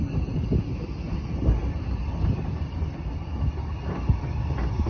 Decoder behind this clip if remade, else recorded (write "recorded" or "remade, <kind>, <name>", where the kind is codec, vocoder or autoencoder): recorded